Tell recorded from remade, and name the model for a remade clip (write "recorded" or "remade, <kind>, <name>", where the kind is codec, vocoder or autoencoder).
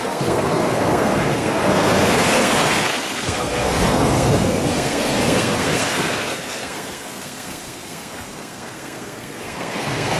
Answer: remade, codec, SNAC